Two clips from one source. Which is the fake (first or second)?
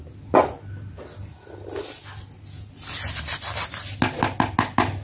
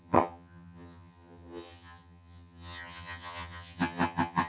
second